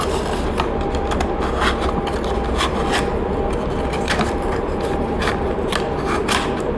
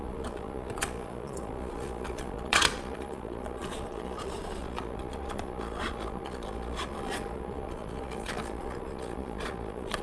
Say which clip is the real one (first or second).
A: first